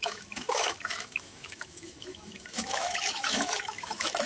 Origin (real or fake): fake